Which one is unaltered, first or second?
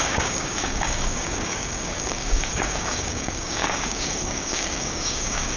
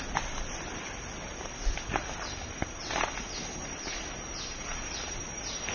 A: second